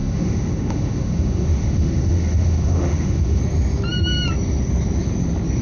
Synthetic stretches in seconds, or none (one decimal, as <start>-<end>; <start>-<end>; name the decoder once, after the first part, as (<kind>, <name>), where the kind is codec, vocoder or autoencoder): 0.0-3.4 (autoencoder, DAC-VAE)